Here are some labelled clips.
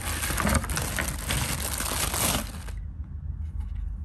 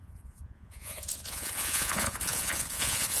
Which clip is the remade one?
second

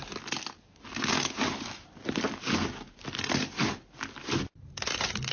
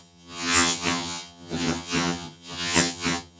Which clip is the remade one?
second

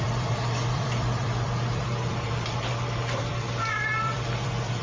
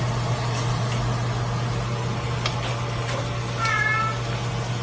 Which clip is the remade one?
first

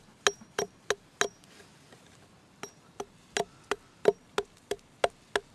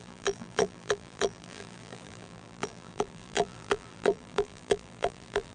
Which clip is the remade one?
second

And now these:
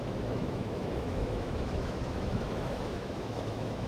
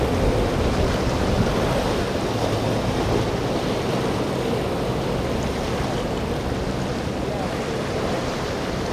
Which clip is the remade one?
first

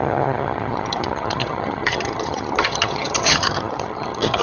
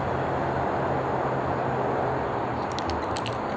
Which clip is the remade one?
first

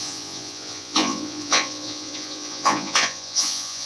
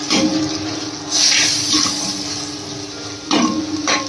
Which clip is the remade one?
first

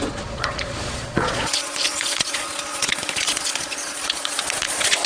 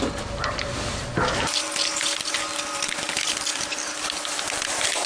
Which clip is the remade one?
first